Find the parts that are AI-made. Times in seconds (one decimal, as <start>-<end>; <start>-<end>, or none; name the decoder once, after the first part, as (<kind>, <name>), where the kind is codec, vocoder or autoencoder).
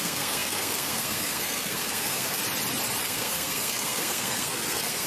0.0-2.4 (codec, SNAC); 3.0-5.1